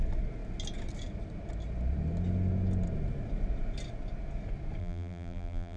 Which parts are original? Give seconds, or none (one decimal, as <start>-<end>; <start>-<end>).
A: 0.0-4.8